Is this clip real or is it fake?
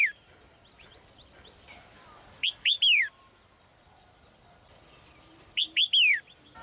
fake